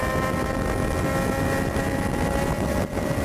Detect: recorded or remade recorded